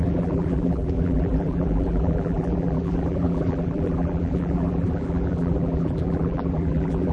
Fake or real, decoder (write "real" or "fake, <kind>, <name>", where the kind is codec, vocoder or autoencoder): fake, vocoder, BigVGAN v2